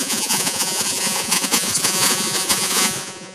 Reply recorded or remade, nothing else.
remade